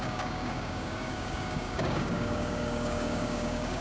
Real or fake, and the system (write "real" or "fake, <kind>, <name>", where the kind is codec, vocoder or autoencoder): fake, codec, DAC